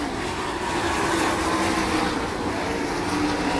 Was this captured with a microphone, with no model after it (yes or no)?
yes